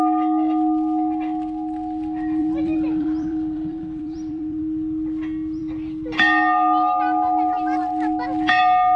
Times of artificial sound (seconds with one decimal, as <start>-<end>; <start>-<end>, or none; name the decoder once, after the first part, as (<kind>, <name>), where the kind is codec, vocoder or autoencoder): 2.4-4.6 (vocoder, BigVGAN v2)